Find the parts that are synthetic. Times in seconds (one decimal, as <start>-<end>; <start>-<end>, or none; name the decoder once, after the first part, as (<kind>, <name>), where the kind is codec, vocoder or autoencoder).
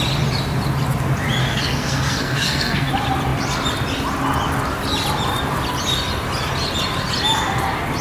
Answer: 1.4-2.9 (codec, SNAC)